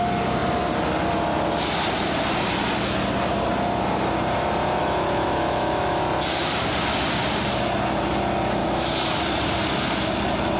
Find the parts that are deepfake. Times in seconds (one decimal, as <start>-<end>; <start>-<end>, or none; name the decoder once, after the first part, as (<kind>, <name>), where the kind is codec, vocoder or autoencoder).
4.8-6.0 (autoencoder, DAC-VAE); 8.6-9.2